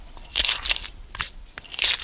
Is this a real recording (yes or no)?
yes